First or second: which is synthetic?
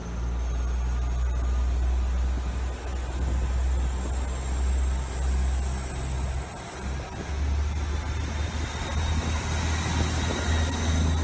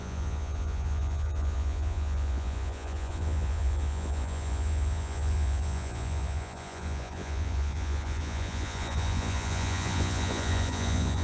second